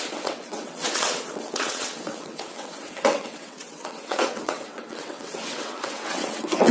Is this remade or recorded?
remade